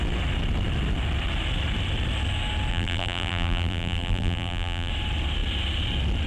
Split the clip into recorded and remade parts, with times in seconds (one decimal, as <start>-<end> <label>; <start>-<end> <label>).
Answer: 0.0-2.7 recorded; 2.7-4.9 remade; 4.9-6.3 recorded